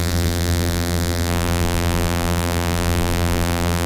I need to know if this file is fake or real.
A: fake